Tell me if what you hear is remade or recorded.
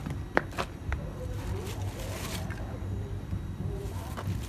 recorded